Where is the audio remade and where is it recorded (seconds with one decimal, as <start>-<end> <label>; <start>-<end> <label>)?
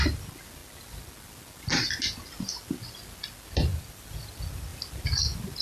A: 0.0-3.7 recorded; 3.7-4.2 remade; 4.2-5.6 recorded